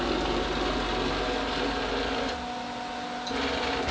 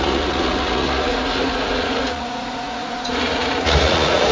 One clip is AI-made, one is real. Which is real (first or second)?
first